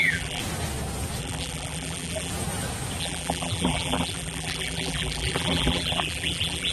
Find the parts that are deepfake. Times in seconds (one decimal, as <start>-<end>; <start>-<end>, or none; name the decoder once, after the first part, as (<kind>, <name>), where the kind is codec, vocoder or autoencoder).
0.0-0.4 (vocoder, BigVGAN v2); 1.2-2.3; 3.0-6.7